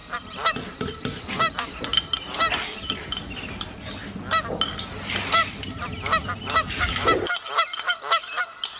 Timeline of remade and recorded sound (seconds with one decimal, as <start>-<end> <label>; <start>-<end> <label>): 0.0-1.8 remade; 1.8-2.4 recorded; 2.4-3.9 remade; 3.9-5.4 recorded; 5.4-8.2 remade; 8.2-8.8 recorded